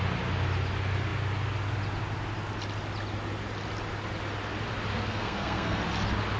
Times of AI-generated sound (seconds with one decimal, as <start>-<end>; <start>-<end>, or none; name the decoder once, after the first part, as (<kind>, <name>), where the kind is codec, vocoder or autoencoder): 4.9-5.8 (codec, SNAC)